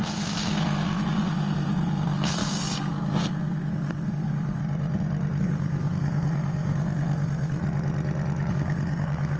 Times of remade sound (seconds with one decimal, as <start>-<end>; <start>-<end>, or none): 0.0-4.6; 5.4-7.6; 8.5-9.4